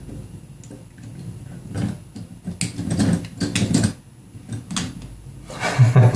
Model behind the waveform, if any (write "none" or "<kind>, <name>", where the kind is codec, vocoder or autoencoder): none